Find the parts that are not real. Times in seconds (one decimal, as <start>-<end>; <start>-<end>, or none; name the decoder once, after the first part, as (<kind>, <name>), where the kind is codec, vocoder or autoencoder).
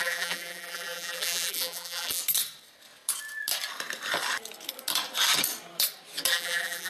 0.0-2.2 (vocoder, BigVGAN v2); 6.3-6.9